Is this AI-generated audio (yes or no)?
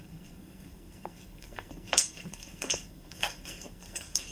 yes